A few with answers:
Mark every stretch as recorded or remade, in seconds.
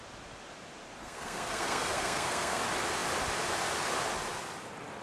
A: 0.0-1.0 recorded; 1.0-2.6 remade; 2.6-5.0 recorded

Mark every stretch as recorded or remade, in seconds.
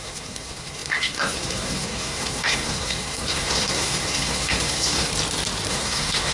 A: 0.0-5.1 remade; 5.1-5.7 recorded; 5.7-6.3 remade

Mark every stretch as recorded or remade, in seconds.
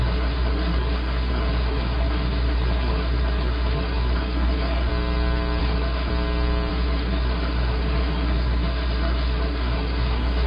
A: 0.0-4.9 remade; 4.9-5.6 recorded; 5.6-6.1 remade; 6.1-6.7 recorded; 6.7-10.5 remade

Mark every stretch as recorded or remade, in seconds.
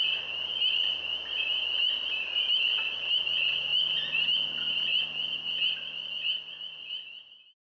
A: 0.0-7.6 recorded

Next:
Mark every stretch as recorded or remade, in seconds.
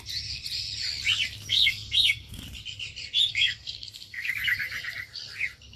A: 0.0-1.5 recorded; 1.5-2.4 remade; 2.4-3.3 recorded; 3.3-4.3 remade; 4.3-5.8 recorded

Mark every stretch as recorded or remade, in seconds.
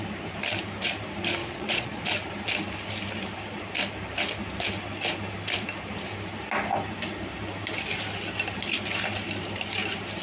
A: 0.0-1.4 recorded; 1.4-2.0 remade; 2.0-10.2 recorded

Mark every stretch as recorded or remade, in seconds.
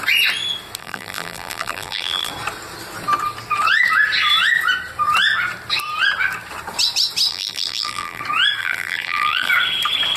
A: 0.0-0.8 recorded; 0.8-2.3 remade; 2.3-7.3 recorded; 7.3-8.2 remade; 8.2-8.6 recorded; 8.6-9.5 remade; 9.5-10.2 recorded